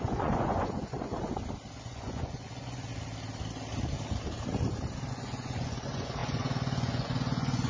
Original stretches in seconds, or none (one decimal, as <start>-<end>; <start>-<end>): 1.1-1.8; 2.9-5.1